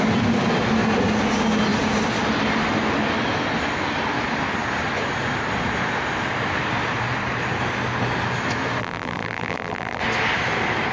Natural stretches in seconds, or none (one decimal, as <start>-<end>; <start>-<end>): 0.0-8.8; 10.0-10.9